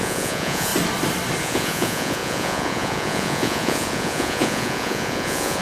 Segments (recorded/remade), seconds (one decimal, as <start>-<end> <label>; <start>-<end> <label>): 0.0-0.7 remade; 0.7-1.4 recorded; 1.4-5.6 remade